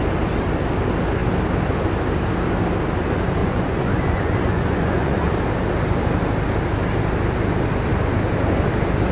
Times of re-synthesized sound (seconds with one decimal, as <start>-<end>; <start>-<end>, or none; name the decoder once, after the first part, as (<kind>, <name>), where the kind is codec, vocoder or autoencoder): 3.4-5.3 (vocoder, Vocos)